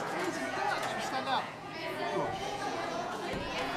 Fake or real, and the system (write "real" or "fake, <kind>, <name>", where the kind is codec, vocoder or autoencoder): fake, vocoder, Vocos